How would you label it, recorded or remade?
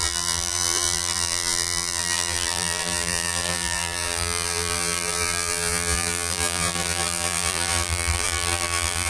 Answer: remade